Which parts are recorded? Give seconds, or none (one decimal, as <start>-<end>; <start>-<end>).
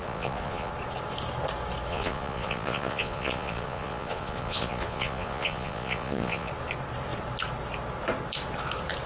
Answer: 0.7-1.9; 6.5-9.1